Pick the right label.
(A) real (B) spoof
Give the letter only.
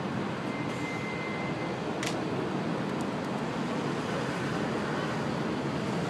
A